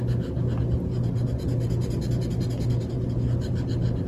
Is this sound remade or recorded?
recorded